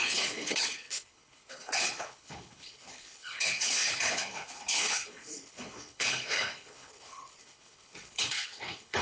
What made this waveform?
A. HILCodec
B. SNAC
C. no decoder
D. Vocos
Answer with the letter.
A